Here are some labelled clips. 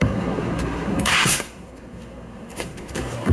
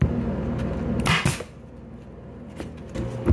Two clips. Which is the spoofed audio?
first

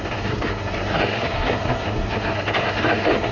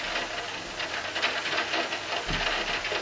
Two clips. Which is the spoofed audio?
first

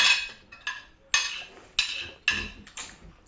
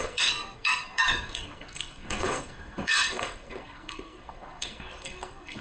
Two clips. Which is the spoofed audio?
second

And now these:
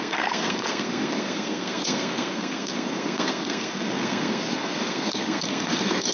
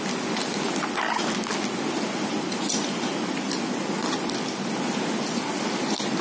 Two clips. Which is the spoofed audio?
first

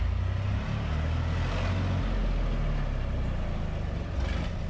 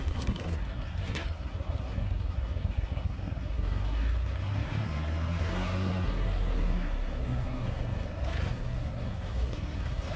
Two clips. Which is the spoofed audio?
second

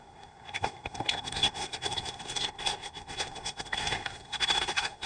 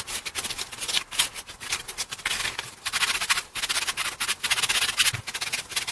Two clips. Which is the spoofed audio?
first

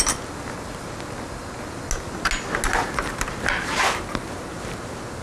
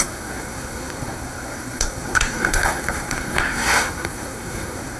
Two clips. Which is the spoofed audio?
second